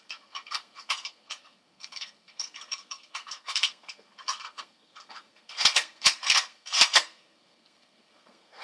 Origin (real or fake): fake